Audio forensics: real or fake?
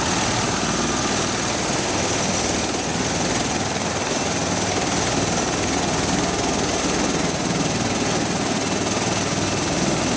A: real